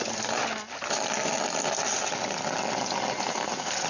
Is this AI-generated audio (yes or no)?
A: no